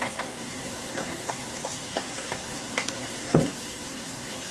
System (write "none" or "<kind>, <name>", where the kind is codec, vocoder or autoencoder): codec, SNAC